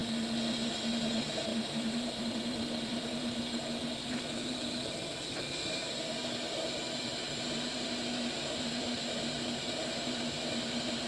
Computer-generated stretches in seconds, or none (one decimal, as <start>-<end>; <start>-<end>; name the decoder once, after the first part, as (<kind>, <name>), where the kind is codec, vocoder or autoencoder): 0.7-6.2 (vocoder, BigVGAN v2); 6.7-11.1